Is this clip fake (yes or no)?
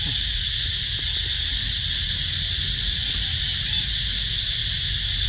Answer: no